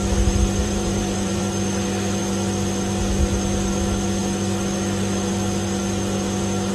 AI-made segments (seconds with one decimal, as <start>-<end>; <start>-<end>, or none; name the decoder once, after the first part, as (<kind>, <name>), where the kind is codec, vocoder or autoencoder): 0.6-1.4 (vocoder, BigVGAN v2)